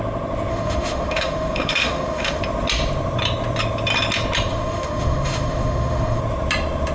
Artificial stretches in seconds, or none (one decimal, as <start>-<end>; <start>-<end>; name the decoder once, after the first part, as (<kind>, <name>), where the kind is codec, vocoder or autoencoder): 0.5-2.4 (autoencoder, DAC-VAE); 4.5-6.2